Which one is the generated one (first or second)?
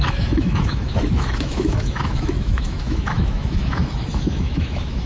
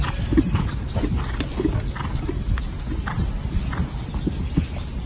first